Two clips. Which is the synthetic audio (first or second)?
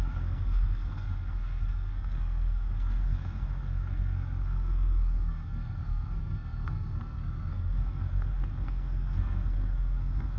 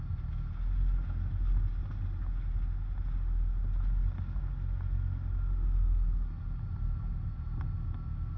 first